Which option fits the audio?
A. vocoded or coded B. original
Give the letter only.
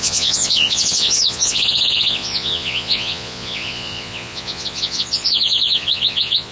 A